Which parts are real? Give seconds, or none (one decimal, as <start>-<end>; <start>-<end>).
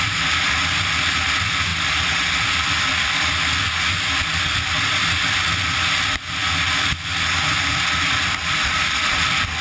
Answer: 0.0-9.6